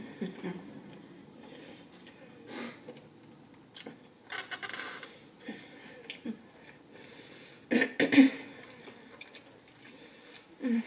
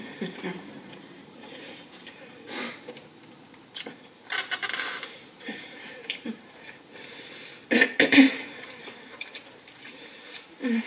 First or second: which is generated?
second